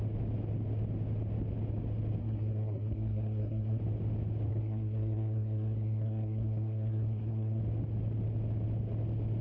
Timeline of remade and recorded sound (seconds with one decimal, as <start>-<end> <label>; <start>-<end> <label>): 0.0-2.2 recorded; 2.2-3.8 remade; 3.8-4.5 recorded; 4.5-7.6 remade; 7.6-9.4 recorded